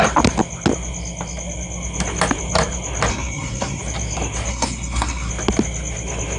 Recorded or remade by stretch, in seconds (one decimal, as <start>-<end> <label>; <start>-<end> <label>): 0.0-3.1 recorded; 3.1-3.8 remade; 3.8-4.5 recorded; 4.5-5.3 remade; 5.3-6.4 recorded